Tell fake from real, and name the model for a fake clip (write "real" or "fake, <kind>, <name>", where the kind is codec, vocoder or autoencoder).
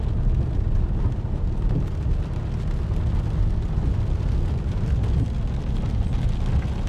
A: real